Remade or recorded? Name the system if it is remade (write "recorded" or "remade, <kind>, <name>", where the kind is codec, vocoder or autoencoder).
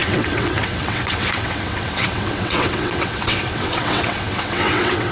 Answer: remade, vocoder, WaveNeXt